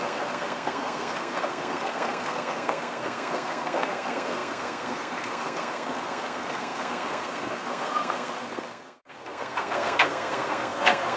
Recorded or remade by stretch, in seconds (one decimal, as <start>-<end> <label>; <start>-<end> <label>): 0.0-11.2 remade